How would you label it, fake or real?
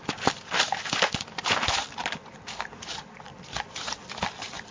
fake